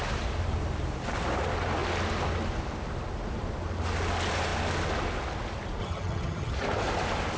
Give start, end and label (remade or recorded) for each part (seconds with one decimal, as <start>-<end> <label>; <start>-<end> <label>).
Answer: 0.0-5.8 recorded; 5.8-6.5 remade; 6.5-7.4 recorded